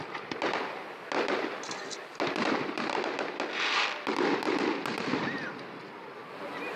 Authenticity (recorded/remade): recorded